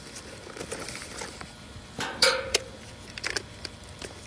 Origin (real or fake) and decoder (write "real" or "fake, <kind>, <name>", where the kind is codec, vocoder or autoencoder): fake, vocoder, BigVGAN v2